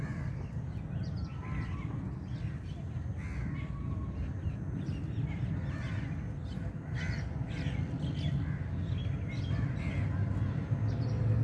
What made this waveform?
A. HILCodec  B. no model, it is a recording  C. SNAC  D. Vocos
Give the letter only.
B